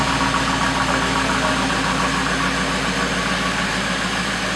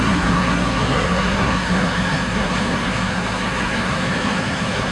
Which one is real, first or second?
first